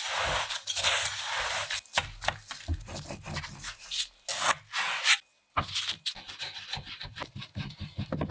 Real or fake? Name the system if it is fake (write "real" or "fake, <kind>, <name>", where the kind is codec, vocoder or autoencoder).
real